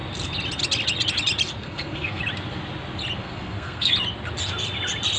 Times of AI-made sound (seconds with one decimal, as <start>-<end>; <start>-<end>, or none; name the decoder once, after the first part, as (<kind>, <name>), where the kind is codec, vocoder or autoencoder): 1.6-2.2 (codec, SNAC); 3.2-3.9